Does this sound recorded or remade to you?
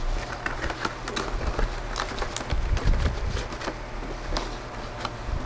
recorded